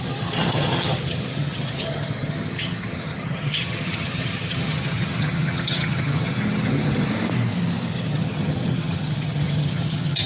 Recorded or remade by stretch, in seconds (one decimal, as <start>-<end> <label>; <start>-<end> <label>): 0.0-7.1 remade; 7.1-7.9 recorded; 7.9-10.3 remade